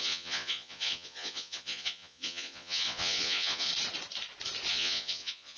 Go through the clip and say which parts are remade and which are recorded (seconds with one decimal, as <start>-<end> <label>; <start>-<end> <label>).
0.0-3.7 remade; 3.7-4.7 recorded; 4.7-5.6 remade